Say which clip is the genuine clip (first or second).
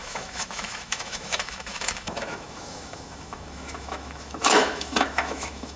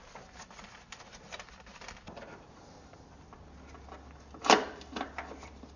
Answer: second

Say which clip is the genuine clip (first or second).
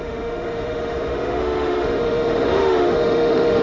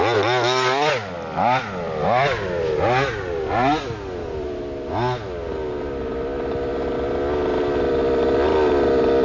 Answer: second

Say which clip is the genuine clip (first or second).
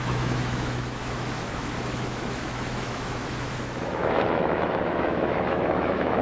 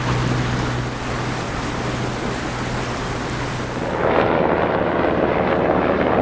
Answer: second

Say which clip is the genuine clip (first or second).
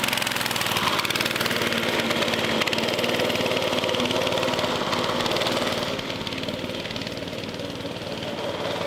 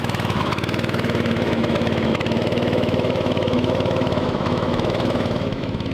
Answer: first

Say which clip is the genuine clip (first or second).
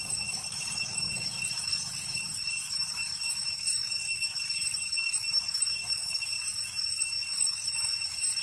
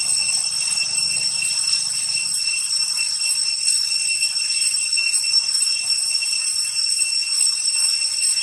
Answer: second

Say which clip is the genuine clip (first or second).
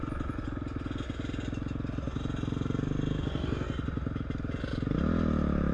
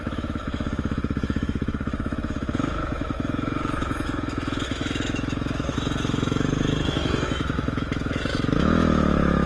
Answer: first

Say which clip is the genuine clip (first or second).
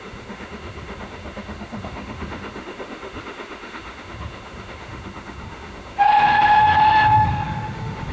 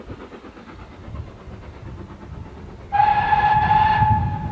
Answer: second